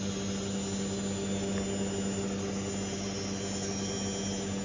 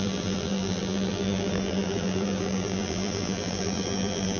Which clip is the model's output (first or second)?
second